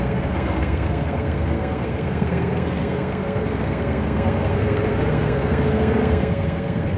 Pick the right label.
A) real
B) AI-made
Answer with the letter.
B